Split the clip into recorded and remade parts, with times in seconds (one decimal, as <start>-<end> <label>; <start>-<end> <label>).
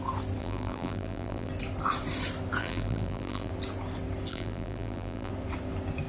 0.0-0.4 recorded; 0.4-1.5 remade; 1.5-2.6 recorded; 2.6-3.5 remade; 3.5-4.3 recorded; 4.3-5.3 remade; 5.3-6.1 recorded